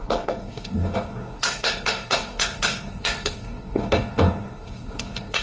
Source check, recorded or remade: remade